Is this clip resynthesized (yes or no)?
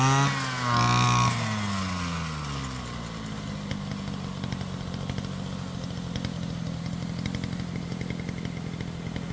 no